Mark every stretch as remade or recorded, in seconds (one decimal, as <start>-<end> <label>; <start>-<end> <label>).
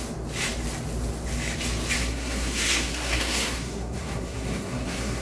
0.0-2.0 recorded; 2.0-5.2 remade